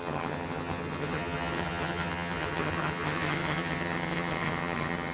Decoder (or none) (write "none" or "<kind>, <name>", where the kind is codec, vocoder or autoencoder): vocoder, HiFi-GAN